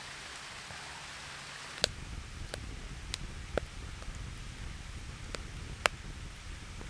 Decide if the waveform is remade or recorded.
recorded